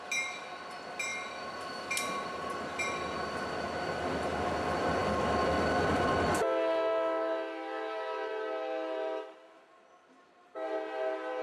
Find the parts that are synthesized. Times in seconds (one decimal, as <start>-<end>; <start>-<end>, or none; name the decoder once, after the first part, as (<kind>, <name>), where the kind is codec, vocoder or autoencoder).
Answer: none